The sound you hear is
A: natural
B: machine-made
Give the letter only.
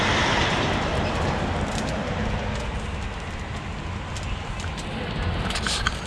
A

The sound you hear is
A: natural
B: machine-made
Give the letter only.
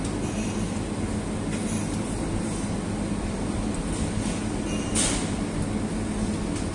A